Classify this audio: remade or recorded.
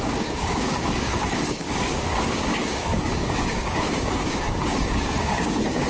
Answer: remade